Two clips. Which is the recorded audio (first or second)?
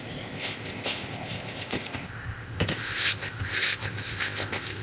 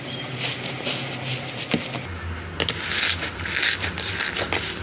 second